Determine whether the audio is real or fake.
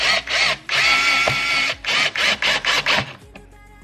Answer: real